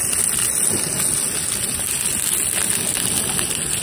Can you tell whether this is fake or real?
real